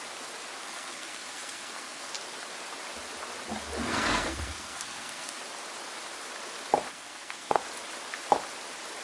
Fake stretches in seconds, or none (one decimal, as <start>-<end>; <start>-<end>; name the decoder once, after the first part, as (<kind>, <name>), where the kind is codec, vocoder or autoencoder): 0.6-2.1 (codec, SNAC); 3.8-5.4; 6.9-7.6